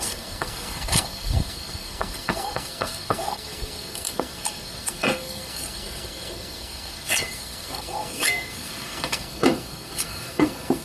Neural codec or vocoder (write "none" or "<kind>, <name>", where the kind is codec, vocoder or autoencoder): codec, SNAC